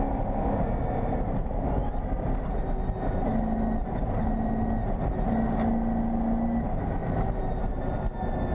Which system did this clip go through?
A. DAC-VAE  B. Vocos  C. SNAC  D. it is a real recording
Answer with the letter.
D